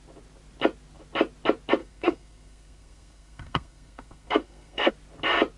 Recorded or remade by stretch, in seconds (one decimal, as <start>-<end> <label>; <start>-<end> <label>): 0.0-1.8 recorded; 1.8-4.9 remade; 4.9-5.6 recorded